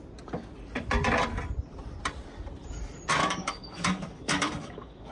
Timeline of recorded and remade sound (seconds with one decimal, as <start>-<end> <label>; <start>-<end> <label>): 0.0-3.2 recorded; 3.2-5.1 remade